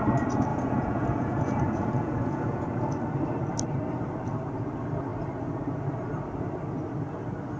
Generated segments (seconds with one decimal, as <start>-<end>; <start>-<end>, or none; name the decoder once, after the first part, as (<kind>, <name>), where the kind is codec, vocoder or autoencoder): 0.5-2.6 (vocoder, Vocos)